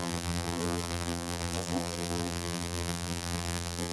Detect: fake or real fake